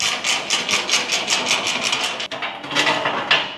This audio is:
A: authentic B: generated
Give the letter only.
A